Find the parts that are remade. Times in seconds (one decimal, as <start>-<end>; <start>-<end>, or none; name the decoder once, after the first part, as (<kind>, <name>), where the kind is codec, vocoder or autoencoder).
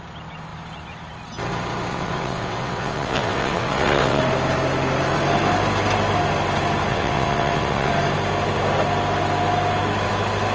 1.9-4.2 (vocoder, WaveNeXt); 6.9-7.9